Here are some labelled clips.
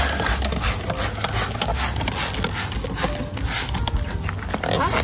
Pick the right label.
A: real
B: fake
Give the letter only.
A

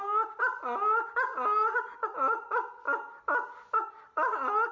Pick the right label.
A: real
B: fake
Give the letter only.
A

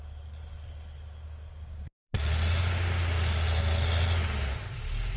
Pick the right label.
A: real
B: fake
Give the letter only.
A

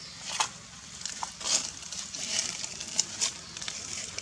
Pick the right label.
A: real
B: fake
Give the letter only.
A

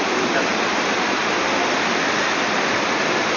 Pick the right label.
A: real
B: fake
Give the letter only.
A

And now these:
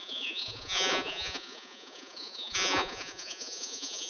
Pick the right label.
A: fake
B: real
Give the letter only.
A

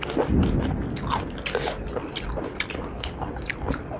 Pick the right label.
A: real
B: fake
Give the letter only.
A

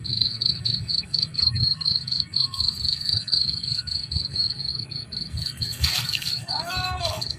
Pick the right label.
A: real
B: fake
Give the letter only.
B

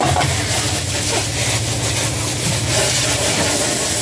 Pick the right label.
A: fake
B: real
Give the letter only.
B